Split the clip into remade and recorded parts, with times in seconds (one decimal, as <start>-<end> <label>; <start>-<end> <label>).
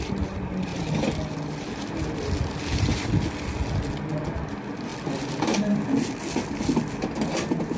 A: 0.0-7.8 recorded